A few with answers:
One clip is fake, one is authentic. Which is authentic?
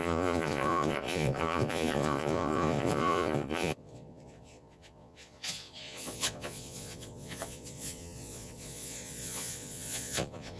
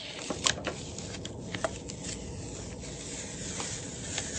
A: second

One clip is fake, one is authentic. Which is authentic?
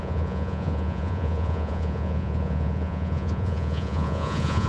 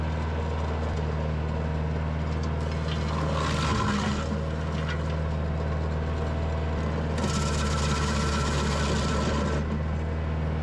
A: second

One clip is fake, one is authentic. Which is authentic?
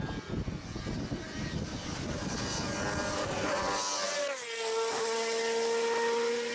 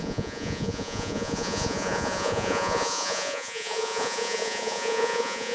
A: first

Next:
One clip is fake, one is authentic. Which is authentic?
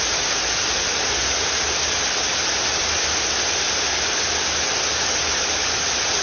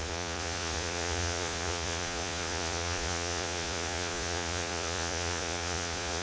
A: first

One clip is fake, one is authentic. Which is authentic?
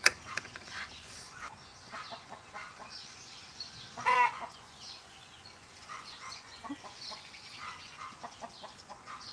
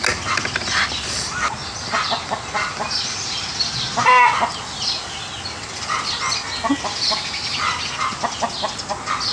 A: second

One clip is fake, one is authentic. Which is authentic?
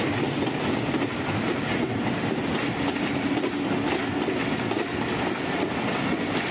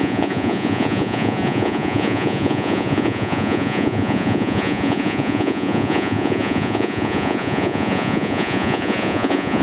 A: first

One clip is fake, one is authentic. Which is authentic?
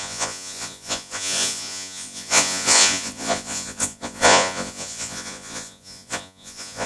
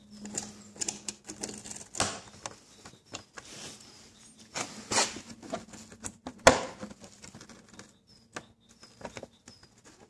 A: second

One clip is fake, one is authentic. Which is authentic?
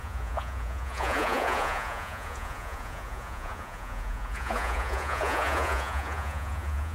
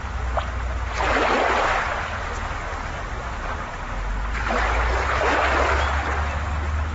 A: second